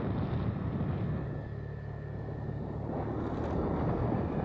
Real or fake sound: real